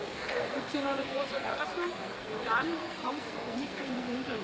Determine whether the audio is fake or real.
fake